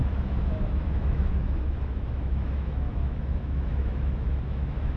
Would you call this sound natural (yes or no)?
no